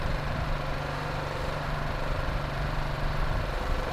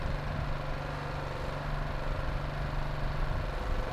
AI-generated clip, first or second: first